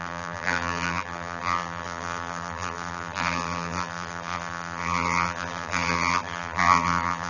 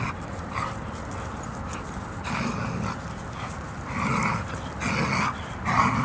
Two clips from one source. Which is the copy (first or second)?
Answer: first